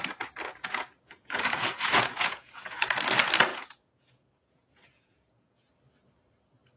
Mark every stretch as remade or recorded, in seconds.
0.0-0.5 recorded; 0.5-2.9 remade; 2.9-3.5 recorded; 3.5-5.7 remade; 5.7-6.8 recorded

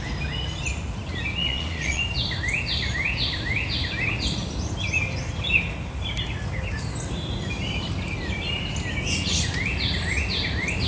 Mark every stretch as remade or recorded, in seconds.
0.0-1.4 recorded; 1.4-2.0 remade; 2.0-10.9 recorded

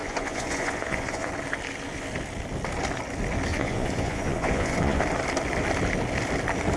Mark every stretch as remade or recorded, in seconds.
0.0-1.3 remade; 1.3-3.5 recorded; 3.5-5.0 remade; 5.0-6.8 recorded

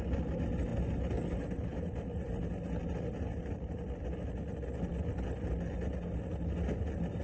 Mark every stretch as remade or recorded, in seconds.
0.0-7.2 recorded

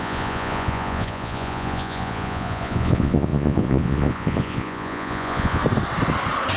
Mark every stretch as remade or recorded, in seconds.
0.0-5.6 remade; 5.6-6.6 recorded

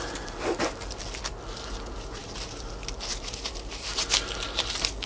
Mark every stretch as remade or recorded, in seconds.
0.0-5.1 recorded